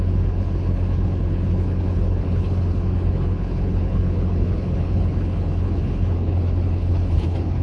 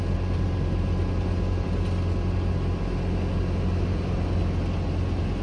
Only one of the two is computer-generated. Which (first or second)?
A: first